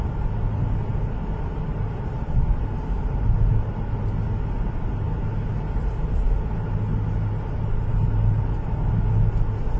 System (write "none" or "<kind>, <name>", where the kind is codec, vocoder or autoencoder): none